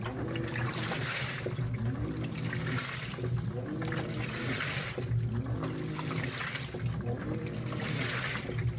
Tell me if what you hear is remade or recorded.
recorded